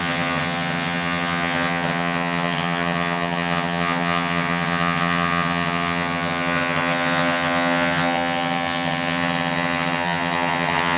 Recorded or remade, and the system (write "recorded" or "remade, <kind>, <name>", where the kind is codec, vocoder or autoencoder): remade, vocoder, HiFi-GAN